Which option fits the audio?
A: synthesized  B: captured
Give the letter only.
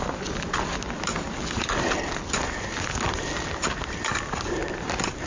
B